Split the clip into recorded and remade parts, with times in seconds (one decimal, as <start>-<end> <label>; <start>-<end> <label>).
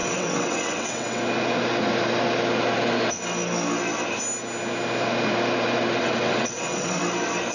0.0-1.2 remade; 1.2-6.0 recorded; 6.0-7.0 remade; 7.0-7.5 recorded